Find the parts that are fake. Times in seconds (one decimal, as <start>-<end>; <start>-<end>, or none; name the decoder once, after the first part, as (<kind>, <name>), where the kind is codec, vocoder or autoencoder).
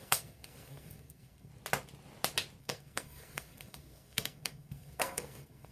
0.0-1.5 (codec, SNAC); 2.6-5.7